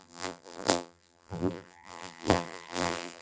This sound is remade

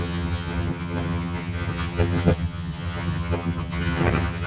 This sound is remade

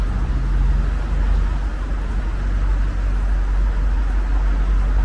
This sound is recorded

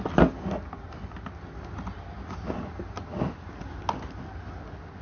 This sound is recorded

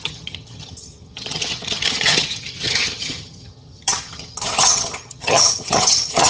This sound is remade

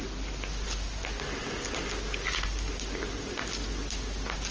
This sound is recorded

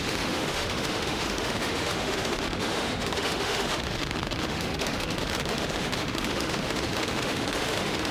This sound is remade